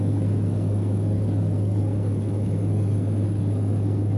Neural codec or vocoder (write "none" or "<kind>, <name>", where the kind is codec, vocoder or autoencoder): codec, SNAC